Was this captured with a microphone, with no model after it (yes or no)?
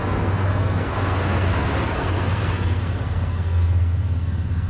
no